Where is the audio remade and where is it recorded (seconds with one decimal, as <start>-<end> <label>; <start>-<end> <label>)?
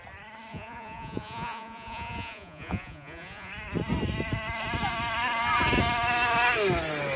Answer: 0.0-0.5 recorded; 0.5-3.5 remade; 3.5-7.2 recorded